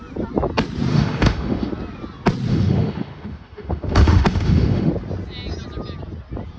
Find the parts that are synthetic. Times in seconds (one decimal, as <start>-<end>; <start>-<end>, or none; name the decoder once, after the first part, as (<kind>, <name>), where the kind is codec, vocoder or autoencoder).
0.9-1.7 (autoencoder, DAC-VAE); 2.5-4.9